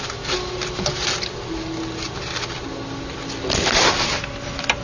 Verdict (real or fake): real